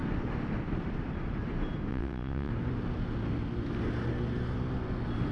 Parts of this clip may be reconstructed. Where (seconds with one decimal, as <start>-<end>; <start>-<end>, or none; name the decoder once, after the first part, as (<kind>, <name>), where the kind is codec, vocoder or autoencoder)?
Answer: 1.9-2.5 (vocoder, WaveNeXt)